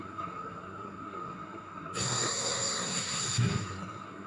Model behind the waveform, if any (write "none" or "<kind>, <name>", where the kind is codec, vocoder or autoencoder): codec, SNAC